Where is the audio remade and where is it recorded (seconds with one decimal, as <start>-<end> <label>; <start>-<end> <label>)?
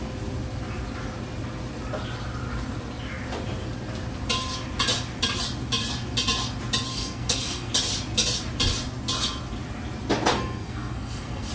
0.0-6.9 recorded; 6.9-7.7 remade; 7.7-10.3 recorded; 10.3-11.5 remade